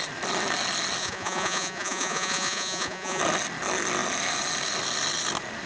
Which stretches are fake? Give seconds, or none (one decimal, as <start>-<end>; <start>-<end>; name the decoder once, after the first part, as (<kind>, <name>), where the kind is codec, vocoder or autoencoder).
1.0-3.2 (vocoder, Vocos)